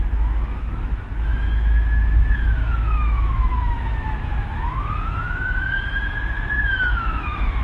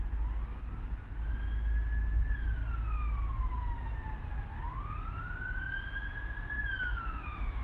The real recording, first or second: second